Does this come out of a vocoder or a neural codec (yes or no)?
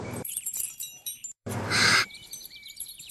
yes